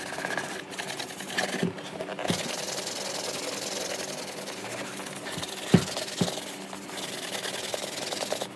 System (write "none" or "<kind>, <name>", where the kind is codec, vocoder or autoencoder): none